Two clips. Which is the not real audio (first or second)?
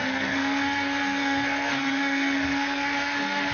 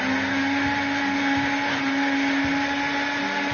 first